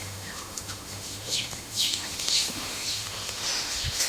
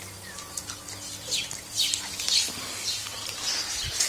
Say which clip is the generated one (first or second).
first